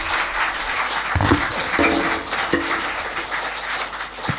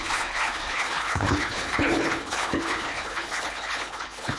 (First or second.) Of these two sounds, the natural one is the first